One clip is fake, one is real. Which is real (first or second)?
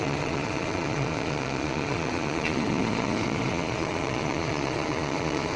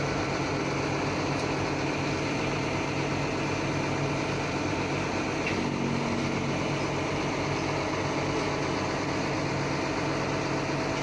second